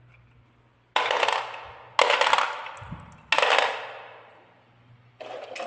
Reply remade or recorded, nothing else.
recorded